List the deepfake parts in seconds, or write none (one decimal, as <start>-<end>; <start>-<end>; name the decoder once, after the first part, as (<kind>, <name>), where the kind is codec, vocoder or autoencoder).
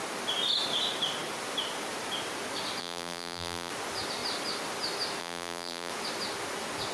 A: 2.8-3.7 (vocoder, BigVGAN v2); 5.2-5.9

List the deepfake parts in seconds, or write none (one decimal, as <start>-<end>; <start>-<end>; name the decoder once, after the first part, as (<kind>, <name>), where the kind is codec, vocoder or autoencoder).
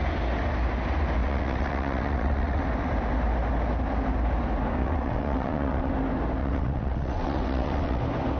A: 1.2-2.6 (vocoder, WaveNeXt); 4.8-5.9; 6.4-8.0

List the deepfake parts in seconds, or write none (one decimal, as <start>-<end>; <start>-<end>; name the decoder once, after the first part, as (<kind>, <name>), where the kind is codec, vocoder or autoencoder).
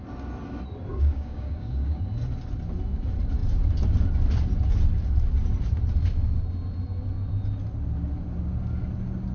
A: 0.9-2.1 (codec, DAC)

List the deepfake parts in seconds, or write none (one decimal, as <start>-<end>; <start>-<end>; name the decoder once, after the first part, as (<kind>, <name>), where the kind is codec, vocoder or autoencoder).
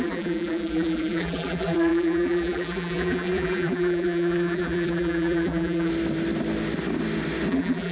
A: 0.0-5.9 (vocoder, BigVGAN v2); 7.5-7.9